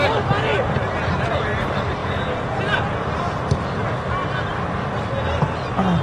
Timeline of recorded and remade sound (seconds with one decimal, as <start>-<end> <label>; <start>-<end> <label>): 0.0-2.0 recorded; 2.0-2.6 remade; 2.6-6.0 recorded

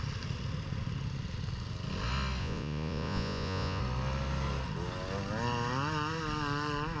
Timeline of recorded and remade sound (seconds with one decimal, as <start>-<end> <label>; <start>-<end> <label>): 0.0-2.4 recorded; 2.4-3.8 remade; 3.8-7.0 recorded